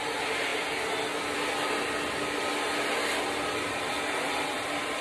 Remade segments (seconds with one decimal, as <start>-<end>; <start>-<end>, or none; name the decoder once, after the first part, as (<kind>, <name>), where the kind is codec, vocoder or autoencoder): none